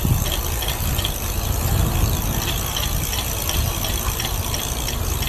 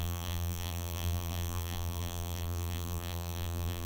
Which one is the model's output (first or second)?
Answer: second